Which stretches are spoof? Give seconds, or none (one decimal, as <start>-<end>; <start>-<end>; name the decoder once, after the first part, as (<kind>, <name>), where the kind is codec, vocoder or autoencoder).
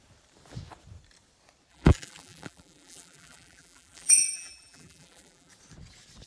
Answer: 1.7-5.5 (vocoder, BigVGAN v2)